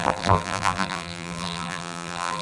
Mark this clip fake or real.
fake